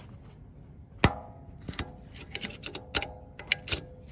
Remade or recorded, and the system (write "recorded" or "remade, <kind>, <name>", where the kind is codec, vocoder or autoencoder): recorded